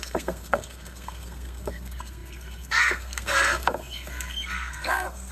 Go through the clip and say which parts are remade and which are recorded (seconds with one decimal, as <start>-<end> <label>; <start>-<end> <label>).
0.0-5.3 remade